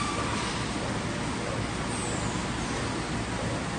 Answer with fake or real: real